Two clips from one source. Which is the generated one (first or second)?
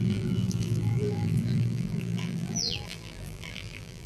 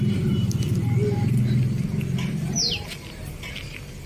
first